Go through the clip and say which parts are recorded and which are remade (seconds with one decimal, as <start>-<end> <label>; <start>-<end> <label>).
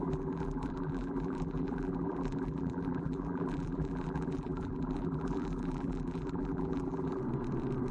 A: 0.0-7.2 remade; 7.2-7.9 recorded